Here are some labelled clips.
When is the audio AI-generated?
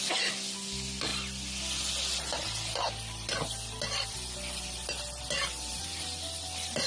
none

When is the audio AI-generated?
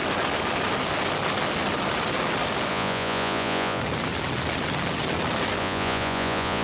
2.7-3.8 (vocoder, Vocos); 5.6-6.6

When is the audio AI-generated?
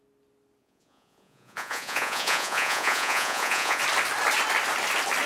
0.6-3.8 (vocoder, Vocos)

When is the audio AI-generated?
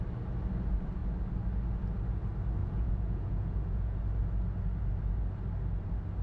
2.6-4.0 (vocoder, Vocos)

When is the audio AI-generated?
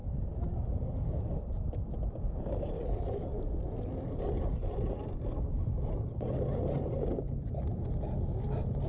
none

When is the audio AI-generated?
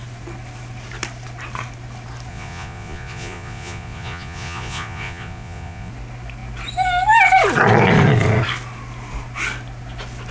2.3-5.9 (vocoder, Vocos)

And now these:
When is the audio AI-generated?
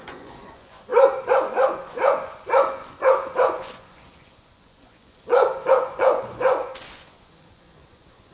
0.0-8.3 (vocoder, Vocos)